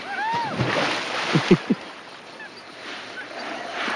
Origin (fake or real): real